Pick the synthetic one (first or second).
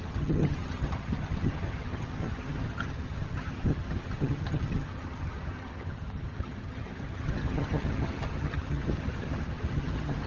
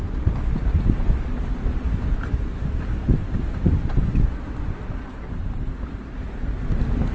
first